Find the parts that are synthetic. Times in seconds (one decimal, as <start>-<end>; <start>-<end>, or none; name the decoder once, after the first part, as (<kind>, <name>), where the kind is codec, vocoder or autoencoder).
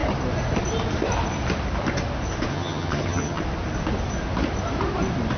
2.5-3.4 (vocoder, HiFi-GAN)